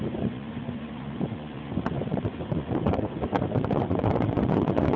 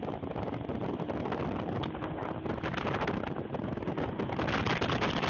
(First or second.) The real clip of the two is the second